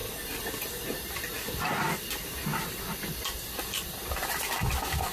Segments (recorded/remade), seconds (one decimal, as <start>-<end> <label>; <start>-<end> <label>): 0.0-5.1 recorded